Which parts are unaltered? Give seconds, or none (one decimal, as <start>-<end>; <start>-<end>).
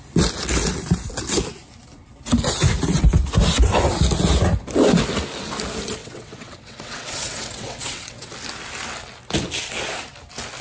0.0-6.0; 8.3-10.6